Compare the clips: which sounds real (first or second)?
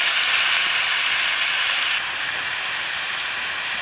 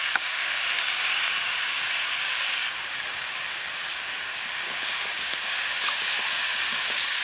first